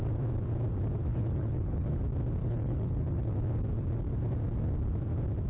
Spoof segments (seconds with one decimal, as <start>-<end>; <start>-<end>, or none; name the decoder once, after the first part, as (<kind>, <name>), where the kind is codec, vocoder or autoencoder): 1.1-1.9 (codec, HILCodec); 2.4-3.4